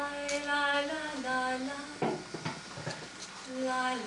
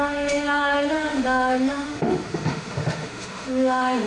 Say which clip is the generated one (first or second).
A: second